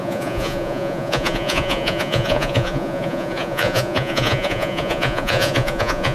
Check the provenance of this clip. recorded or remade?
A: remade